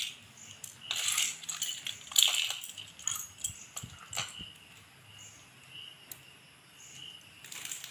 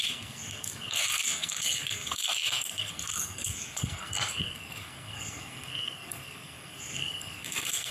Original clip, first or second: first